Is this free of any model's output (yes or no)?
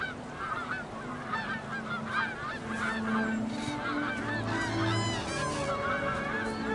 yes